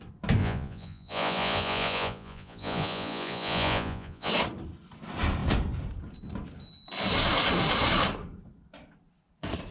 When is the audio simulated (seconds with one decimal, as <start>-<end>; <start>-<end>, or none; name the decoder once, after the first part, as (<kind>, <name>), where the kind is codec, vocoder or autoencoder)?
0.4-4.3 (vocoder, Vocos)